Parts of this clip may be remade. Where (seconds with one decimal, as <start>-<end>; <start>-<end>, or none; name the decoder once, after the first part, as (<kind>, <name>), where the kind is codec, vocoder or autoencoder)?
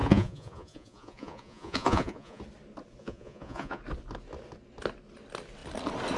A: 0.0-2.4 (vocoder, Vocos); 3.0-3.8